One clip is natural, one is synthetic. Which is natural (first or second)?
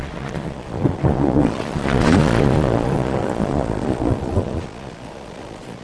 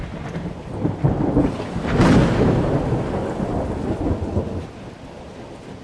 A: second